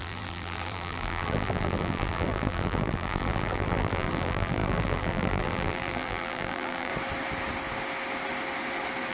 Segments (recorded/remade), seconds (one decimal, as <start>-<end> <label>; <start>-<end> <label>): 0.0-6.9 remade; 6.9-9.1 recorded